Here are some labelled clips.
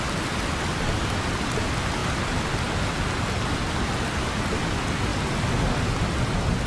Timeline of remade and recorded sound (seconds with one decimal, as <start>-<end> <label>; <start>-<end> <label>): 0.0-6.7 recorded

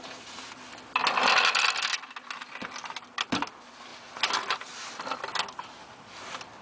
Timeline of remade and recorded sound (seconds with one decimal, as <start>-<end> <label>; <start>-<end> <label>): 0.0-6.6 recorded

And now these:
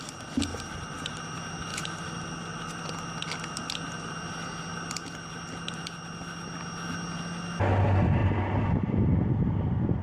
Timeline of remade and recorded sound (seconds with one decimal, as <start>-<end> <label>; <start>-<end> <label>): 0.0-0.5 recorded; 0.5-1.2 remade; 1.2-1.7 recorded; 1.7-2.2 remade; 2.2-10.0 recorded

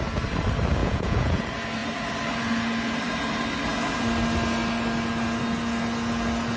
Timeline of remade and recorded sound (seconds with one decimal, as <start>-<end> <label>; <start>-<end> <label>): 0.0-0.8 recorded; 0.8-1.4 remade; 1.4-6.6 recorded

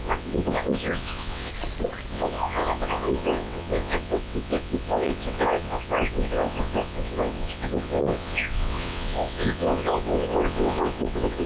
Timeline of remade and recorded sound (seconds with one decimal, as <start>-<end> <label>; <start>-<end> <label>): 0.0-1.5 remade; 1.5-2.1 recorded; 2.1-11.5 remade

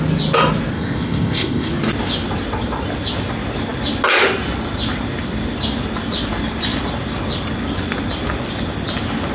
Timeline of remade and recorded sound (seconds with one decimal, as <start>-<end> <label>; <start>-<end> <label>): 0.0-0.7 recorded; 0.7-1.7 remade; 1.7-9.3 recorded